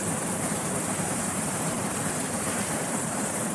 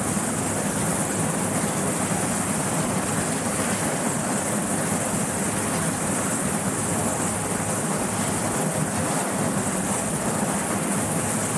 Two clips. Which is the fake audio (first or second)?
first